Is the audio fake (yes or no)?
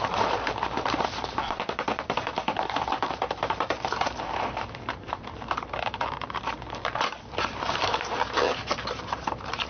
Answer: yes